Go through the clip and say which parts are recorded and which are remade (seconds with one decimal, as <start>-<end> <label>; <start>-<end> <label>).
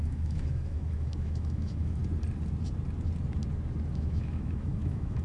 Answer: 0.0-2.0 remade; 2.0-3.9 recorded; 3.9-5.2 remade